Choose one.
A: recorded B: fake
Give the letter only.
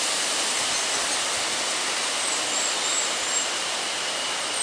A